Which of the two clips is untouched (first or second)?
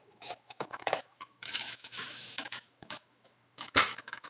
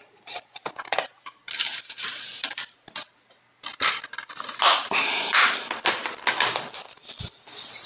second